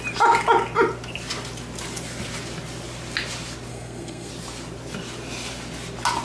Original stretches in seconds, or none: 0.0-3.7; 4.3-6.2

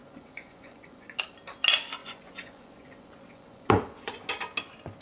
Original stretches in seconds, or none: 1.2-2.0; 4.3-5.0

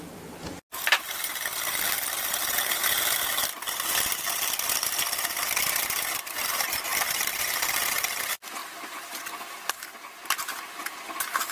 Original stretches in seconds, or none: 0.0-8.6; 9.7-11.5

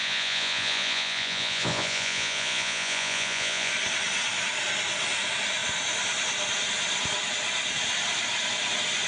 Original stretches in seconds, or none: 3.7-9.1

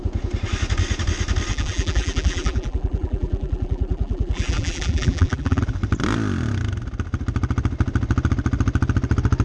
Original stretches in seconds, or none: 0.0-1.5; 5.6-9.4

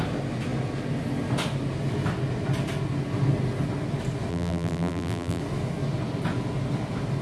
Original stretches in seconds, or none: 0.0-4.3; 5.4-7.2

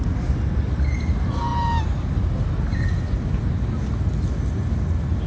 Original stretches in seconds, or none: 0.0-5.3

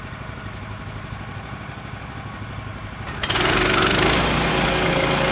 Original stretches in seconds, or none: 0.0-4.5